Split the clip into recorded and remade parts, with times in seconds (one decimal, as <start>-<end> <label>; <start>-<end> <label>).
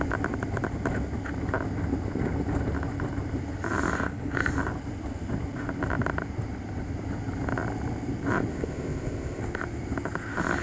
0.0-8.5 recorded; 8.5-9.4 remade; 9.4-10.6 recorded